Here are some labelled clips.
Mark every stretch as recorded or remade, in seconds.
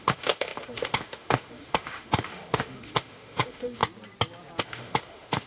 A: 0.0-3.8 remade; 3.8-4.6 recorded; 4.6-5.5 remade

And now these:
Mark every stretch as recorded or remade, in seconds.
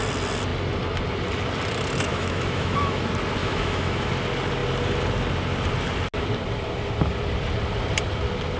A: 0.0-2.1 recorded; 2.1-3.0 remade; 3.0-3.4 recorded; 3.4-4.1 remade; 4.1-8.6 recorded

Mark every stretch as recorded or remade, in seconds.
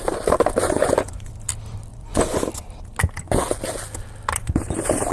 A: 0.0-0.6 recorded; 0.6-1.3 remade; 1.3-1.9 recorded; 1.9-2.4 remade; 2.4-5.1 recorded